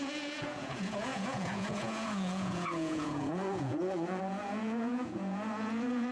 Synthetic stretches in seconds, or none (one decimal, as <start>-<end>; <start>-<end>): 0.0-6.1